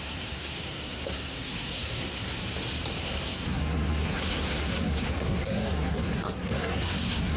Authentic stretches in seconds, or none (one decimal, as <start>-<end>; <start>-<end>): 2.4-3.0